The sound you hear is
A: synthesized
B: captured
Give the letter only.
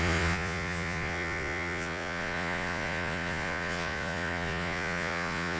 A